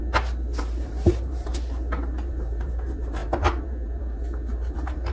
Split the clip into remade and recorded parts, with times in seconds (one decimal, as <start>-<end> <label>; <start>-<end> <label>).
0.0-0.6 recorded; 0.6-1.5 remade; 1.5-2.3 recorded; 2.3-5.1 remade